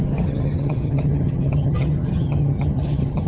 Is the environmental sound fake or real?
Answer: fake